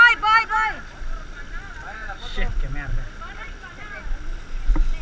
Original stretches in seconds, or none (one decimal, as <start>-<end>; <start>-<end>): 0.0-5.0

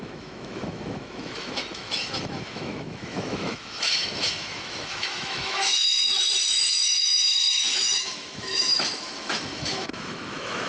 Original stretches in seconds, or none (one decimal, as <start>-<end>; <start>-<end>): none

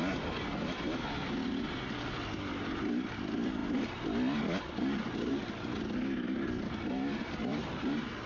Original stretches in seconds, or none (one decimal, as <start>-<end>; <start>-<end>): 0.0-8.3

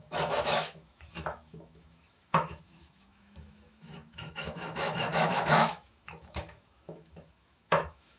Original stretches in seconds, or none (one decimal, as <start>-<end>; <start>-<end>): none

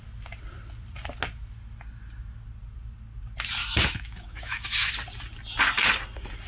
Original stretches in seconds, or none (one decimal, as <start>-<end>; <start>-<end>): 0.0-3.6; 4.9-6.5